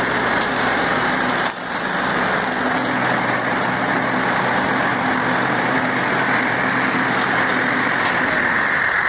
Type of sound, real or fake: real